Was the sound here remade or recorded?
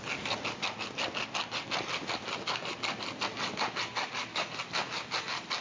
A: recorded